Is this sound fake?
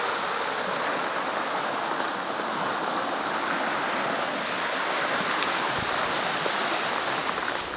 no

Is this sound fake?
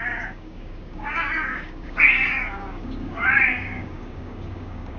yes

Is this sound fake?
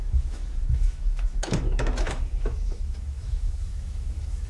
yes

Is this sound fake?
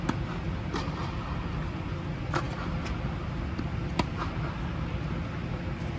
no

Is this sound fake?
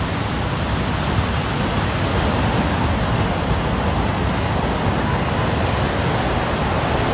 no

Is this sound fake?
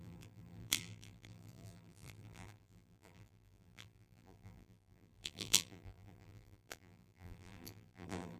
yes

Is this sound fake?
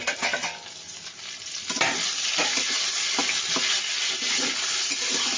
no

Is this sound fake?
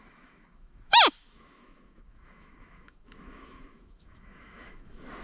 yes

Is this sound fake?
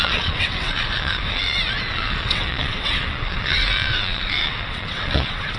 yes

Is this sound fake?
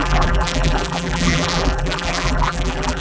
yes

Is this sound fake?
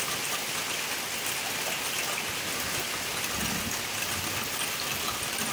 no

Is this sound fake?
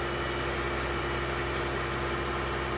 no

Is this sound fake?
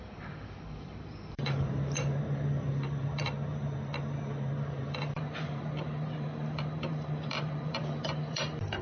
yes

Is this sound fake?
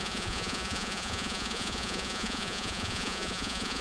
yes